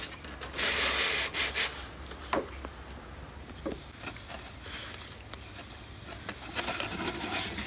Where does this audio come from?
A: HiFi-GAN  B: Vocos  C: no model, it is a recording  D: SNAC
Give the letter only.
C